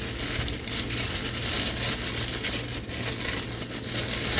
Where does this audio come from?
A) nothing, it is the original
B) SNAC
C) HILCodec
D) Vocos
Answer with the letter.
A